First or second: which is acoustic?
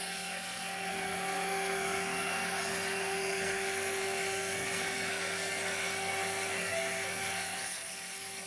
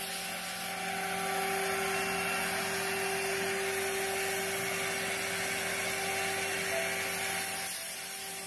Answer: second